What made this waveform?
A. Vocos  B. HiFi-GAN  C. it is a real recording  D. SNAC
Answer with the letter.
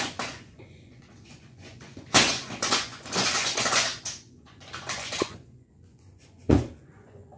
A